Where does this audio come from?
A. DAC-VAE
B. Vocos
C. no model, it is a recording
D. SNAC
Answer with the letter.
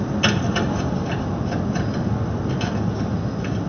C